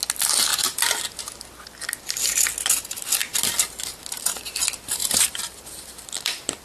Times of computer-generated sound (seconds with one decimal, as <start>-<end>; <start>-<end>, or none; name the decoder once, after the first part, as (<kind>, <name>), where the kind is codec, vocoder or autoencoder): 5.0-6.6 (vocoder, BigVGAN v2)